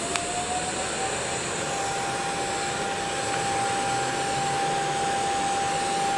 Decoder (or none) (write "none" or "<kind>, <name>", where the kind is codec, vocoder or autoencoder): none